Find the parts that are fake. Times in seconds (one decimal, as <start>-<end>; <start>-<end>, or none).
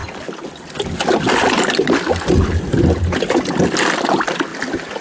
none